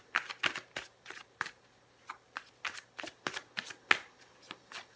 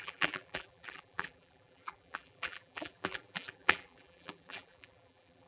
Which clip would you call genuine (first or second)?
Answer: first